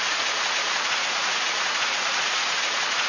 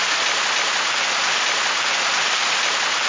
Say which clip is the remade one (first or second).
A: first